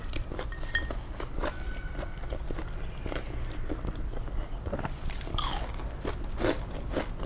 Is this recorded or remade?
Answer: recorded